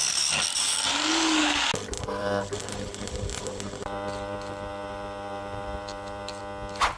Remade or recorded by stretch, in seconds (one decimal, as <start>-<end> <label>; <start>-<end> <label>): 0.0-2.2 recorded; 2.2-6.4 remade; 6.4-7.0 recorded